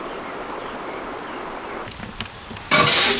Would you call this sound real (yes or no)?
yes